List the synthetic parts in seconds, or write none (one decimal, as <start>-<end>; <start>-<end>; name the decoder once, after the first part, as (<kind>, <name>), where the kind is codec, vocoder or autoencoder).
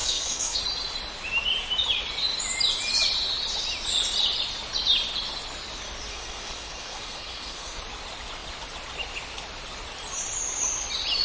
0.0-0.6 (codec, SNAC); 6.1-7.8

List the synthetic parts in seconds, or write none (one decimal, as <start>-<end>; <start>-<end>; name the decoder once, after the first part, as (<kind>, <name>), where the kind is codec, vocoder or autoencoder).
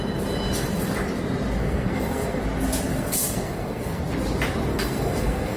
1.6-2.4 (codec, SNAC); 2.9-4.0; 4.7-5.6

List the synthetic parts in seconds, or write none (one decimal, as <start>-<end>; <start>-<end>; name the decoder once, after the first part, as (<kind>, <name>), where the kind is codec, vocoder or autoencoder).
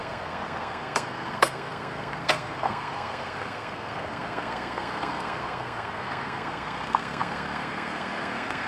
0.0-8.7 (codec, SNAC)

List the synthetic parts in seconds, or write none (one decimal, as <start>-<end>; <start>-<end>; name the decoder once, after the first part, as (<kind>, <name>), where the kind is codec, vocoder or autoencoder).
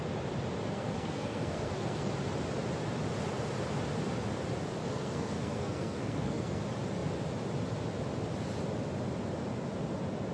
0.7-2.1 (codec, SNAC); 4.8-6.6